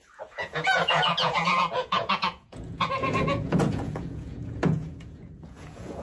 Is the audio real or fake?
fake